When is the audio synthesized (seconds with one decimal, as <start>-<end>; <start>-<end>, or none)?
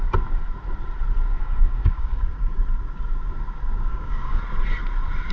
1.4-2.6; 3.9-4.4